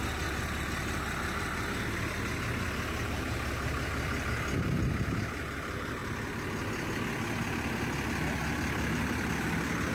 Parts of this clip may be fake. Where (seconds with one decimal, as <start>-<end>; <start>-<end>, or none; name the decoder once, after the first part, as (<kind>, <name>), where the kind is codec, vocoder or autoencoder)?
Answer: none